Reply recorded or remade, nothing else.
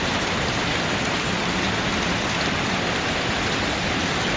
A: recorded